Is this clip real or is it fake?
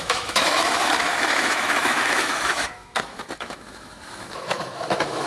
fake